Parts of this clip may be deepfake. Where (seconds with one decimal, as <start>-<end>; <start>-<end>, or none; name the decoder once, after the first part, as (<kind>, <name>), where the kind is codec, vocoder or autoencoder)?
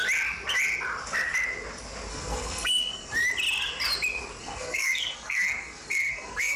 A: 2.1-3.2 (codec, SNAC); 4.4-6.6